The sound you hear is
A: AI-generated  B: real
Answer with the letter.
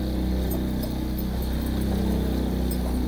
B